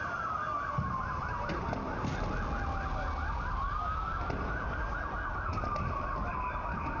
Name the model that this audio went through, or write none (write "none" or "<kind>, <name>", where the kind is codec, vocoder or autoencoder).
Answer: none